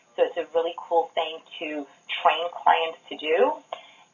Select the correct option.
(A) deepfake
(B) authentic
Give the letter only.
B